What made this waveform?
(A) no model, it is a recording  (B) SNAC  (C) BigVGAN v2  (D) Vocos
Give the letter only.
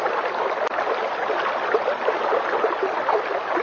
A